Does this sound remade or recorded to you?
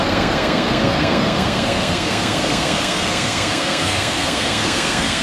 remade